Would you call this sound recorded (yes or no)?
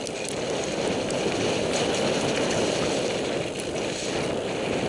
yes